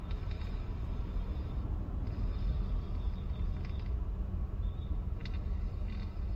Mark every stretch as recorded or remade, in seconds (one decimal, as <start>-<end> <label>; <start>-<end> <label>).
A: 0.0-6.4 recorded